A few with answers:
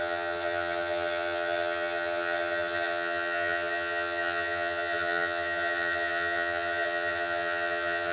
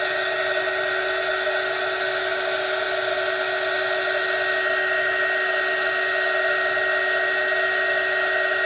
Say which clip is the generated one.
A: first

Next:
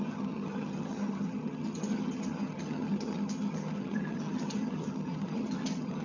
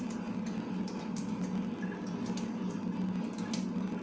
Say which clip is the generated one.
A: first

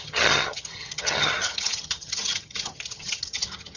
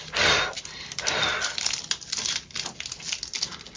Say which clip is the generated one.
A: first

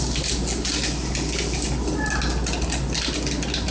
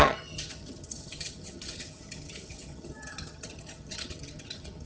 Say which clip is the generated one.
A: second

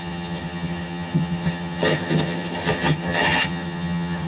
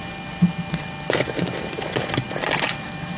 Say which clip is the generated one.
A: first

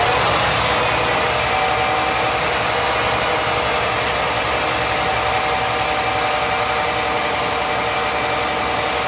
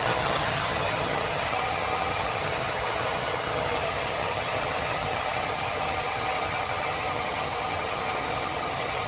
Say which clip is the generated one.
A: second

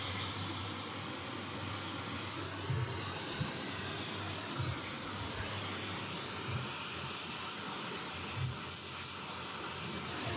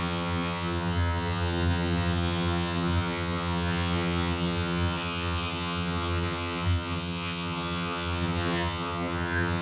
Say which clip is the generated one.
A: second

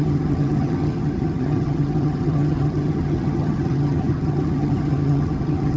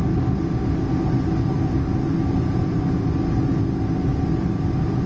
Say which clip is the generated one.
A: first